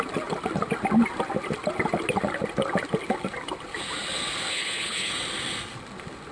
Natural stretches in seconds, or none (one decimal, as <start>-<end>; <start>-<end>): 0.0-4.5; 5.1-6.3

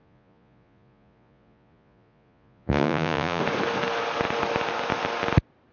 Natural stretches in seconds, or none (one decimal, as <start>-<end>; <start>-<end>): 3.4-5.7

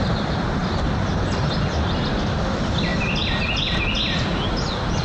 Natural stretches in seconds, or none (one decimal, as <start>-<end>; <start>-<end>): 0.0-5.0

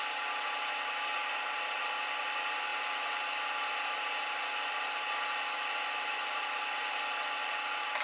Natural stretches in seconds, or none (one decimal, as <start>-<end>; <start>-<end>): 0.0-1.2; 1.8-8.0